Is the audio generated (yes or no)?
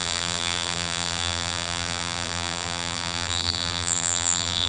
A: yes